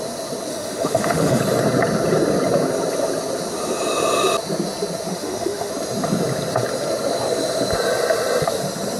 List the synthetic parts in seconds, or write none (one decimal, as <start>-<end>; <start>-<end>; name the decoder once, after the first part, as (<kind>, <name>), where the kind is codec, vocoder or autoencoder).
0.5-1.4 (autoencoder, DAC-VAE); 5.1-5.7